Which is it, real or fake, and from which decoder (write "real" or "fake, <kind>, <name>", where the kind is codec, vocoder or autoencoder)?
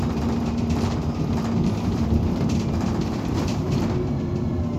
fake, vocoder, BigVGAN v2